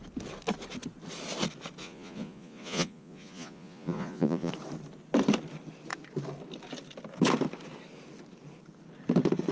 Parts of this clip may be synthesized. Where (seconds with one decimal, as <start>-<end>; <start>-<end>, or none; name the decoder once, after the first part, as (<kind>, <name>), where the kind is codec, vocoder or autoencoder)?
1.8-4.5 (vocoder, Vocos)